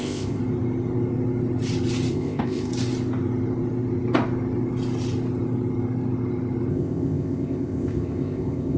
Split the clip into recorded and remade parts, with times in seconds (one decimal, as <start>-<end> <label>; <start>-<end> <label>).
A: 0.0-0.4 remade; 0.4-2.1 recorded; 2.1-2.7 remade; 2.7-6.7 recorded; 6.7-8.8 remade